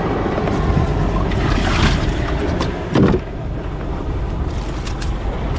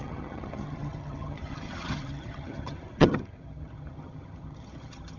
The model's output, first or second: second